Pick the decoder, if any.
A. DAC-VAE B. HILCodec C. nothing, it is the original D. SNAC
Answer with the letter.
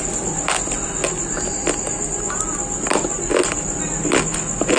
C